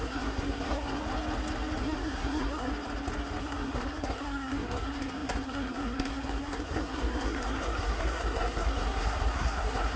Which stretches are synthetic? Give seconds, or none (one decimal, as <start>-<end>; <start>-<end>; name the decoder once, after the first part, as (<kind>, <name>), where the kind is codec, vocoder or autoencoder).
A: 0.0-1.0 (codec, SNAC); 1.8-2.7; 3.4-10.0